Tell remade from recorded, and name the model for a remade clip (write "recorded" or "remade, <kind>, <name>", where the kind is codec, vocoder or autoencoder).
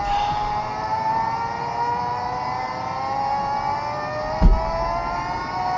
recorded